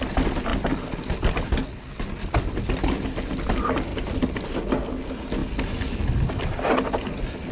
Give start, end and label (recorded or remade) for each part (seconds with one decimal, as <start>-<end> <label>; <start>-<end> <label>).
0.0-7.5 recorded

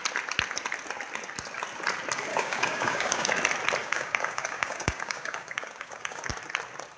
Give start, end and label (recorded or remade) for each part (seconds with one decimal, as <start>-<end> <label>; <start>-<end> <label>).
0.0-2.3 recorded; 2.3-3.3 remade; 3.3-3.8 recorded; 3.8-6.3 remade; 6.3-7.0 recorded

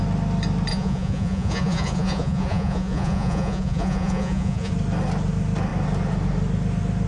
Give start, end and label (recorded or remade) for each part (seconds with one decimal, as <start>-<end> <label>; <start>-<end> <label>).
0.0-0.7 recorded; 0.7-4.7 remade; 4.7-7.1 recorded

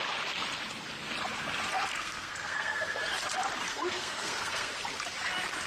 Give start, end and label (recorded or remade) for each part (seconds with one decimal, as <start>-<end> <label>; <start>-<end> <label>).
0.0-1.9 recorded; 1.9-3.0 remade; 3.0-3.7 recorded; 3.7-4.7 remade; 4.7-5.7 recorded

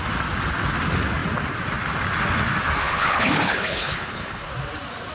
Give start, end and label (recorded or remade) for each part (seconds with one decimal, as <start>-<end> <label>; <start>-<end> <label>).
0.0-2.8 recorded; 2.8-4.5 remade; 4.5-5.1 recorded

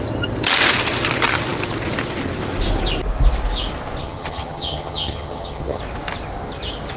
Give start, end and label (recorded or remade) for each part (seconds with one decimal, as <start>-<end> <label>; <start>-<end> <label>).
0.0-4.0 recorded; 4.0-5.8 remade; 5.8-7.0 recorded

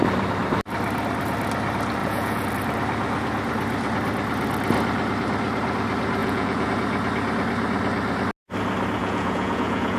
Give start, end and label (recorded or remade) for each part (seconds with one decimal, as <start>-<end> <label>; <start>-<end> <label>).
0.0-2.0 recorded; 2.0-2.5 remade; 2.5-6.2 recorded; 6.2-6.7 remade; 6.7-9.0 recorded; 9.0-10.0 remade

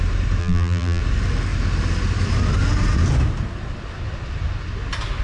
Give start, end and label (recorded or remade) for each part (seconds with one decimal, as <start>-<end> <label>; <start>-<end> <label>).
0.0-0.4 recorded; 0.4-1.0 remade; 1.0-5.2 recorded